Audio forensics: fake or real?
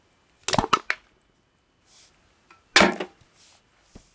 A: real